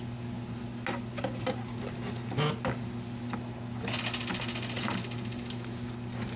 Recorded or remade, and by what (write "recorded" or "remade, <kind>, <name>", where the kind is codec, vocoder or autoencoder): recorded